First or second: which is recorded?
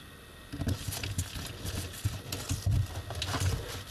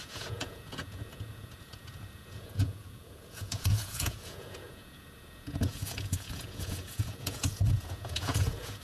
first